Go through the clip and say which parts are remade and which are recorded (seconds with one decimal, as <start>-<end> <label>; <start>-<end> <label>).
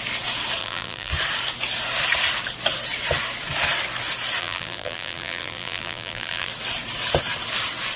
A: 0.0-0.6 recorded; 0.6-1.1 remade; 1.1-4.4 recorded; 4.4-6.5 remade; 6.5-8.0 recorded